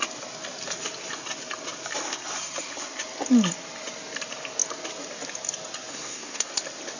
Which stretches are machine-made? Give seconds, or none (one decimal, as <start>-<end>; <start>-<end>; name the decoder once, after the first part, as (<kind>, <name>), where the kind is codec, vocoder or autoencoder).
5.9-6.5 (codec, SNAC)